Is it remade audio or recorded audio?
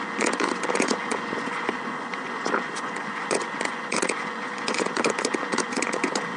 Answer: remade